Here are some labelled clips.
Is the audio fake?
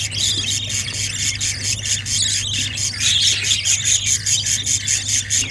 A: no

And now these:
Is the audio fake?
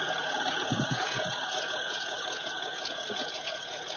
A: yes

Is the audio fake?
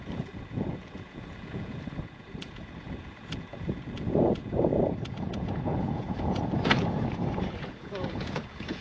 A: yes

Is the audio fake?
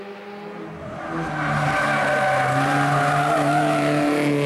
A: no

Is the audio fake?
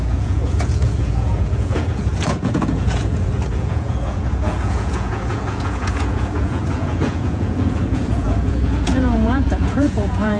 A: yes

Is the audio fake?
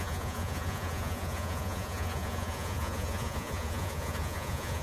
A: yes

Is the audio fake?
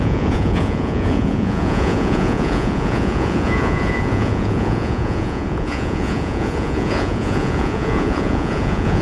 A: yes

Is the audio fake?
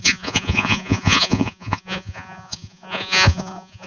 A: yes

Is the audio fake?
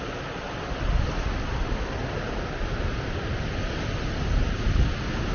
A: no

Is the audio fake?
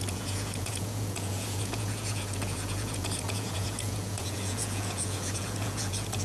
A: yes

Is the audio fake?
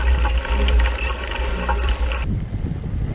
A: no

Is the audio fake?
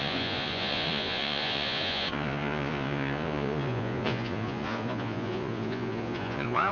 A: yes